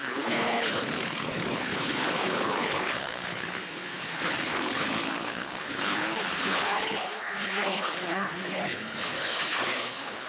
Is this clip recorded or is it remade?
remade